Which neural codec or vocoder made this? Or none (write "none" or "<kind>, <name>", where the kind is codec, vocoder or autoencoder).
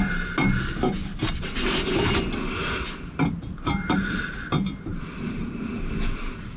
none